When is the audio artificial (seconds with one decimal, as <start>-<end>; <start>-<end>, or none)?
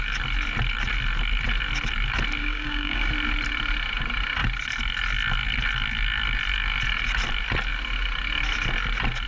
2.4-3.1